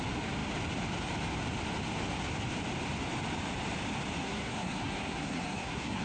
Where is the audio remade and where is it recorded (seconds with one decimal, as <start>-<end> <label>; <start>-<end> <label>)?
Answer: 0.0-4.2 recorded; 4.2-6.0 remade